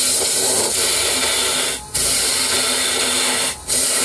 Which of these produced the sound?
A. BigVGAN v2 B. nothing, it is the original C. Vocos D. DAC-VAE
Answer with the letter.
B